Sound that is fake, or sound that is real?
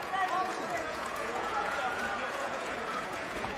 fake